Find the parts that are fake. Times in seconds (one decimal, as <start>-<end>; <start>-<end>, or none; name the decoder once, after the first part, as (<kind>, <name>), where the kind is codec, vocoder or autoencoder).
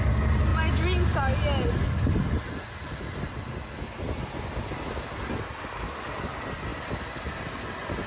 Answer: none